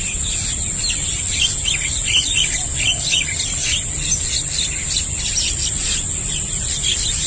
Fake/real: real